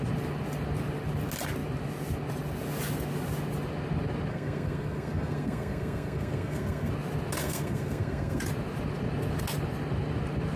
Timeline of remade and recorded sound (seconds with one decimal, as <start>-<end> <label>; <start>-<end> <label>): 0.0-4.3 recorded; 4.3-6.9 remade; 6.9-7.4 recorded; 7.4-8.4 remade; 8.4-10.6 recorded